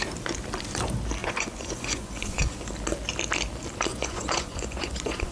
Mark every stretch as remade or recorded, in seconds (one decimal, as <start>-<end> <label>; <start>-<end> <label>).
0.0-1.2 recorded; 1.2-2.7 remade; 2.7-3.9 recorded; 3.9-5.3 remade